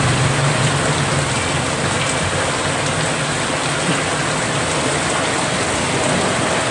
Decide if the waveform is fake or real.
real